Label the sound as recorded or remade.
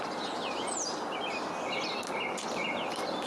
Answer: recorded